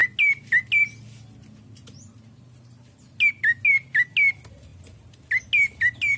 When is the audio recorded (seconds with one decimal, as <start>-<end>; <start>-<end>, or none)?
0.0-6.2